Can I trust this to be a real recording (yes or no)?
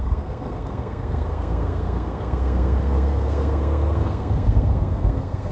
no